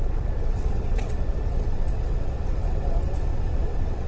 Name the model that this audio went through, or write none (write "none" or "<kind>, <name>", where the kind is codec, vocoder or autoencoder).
vocoder, WaveNeXt